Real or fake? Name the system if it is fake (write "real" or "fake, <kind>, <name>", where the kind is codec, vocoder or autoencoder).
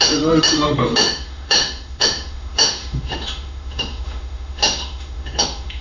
fake, autoencoder, DAC-VAE